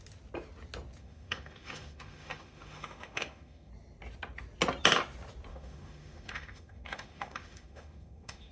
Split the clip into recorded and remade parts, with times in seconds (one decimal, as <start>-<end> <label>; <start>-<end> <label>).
0.0-1.0 recorded; 1.0-3.7 remade; 3.7-5.5 recorded; 5.5-8.5 remade

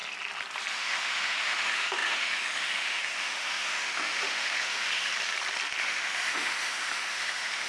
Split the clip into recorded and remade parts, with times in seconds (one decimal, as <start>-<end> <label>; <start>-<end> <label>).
0.0-0.7 recorded; 0.7-5.1 remade; 5.1-5.8 recorded; 5.8-7.7 remade

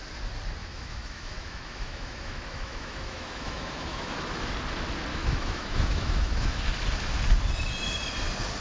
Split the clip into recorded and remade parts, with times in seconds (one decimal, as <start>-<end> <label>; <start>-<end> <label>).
0.0-0.6 recorded; 0.6-4.5 remade; 4.5-5.1 recorded; 5.1-6.6 remade; 6.6-8.6 recorded